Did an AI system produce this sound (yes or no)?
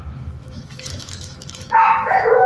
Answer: yes